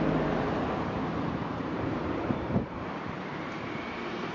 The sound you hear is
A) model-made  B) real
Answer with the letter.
A